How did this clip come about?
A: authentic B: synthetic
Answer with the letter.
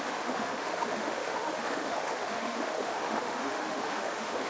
B